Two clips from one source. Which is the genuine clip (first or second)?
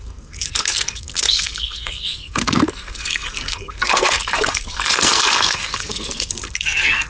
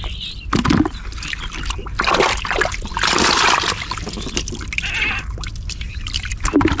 second